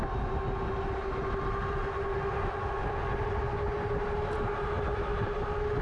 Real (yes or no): yes